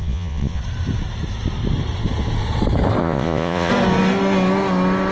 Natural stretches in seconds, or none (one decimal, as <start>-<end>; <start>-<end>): 0.6-3.0; 3.7-5.1